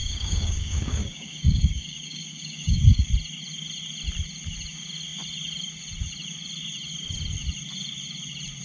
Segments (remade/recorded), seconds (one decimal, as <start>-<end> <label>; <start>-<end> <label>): 0.0-3.1 remade; 3.1-8.6 recorded